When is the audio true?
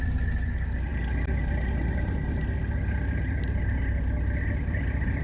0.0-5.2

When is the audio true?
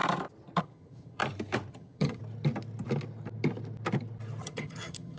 0.0-0.6; 1.2-1.7; 2.2-4.4